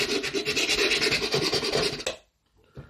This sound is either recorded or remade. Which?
recorded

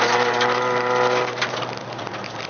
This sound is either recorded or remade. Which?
remade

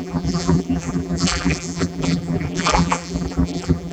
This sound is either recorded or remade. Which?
remade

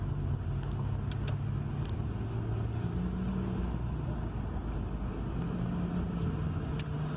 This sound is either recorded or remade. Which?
recorded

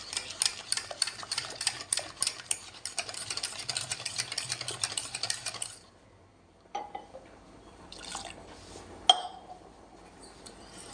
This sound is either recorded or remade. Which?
recorded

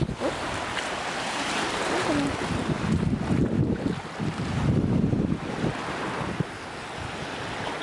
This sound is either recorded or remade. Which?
recorded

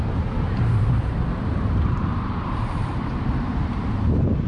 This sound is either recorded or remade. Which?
remade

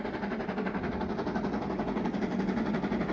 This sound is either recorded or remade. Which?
recorded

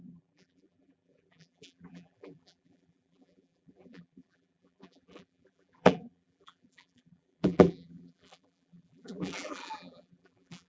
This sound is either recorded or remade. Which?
remade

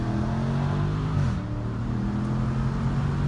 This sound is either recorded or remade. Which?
recorded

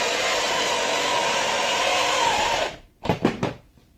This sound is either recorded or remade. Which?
remade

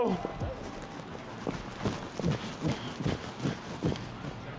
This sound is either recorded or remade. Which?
recorded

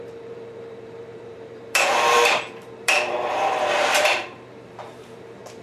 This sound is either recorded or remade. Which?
remade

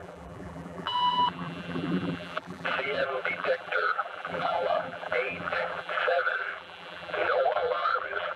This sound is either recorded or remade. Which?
remade